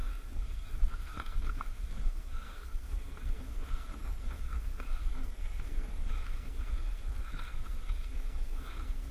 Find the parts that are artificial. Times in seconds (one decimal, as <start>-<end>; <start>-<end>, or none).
0.0-9.1